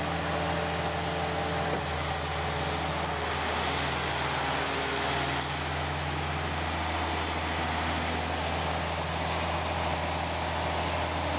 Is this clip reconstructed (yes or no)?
no